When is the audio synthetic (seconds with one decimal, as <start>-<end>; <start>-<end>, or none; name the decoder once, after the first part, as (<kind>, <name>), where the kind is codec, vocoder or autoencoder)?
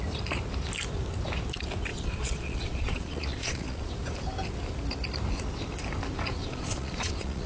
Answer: 1.9-3.9 (vocoder, Vocos); 6.4-7.5